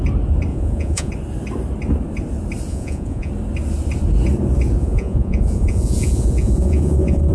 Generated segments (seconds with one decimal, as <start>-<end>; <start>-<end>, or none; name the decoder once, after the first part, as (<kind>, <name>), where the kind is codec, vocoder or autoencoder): 0.5-1.1 (vocoder, Vocos); 2.7-3.3; 4.8-7.3

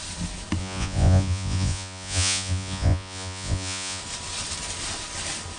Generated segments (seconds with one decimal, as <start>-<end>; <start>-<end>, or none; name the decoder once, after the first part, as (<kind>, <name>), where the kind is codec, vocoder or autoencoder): 0.6-4.0 (vocoder, Vocos)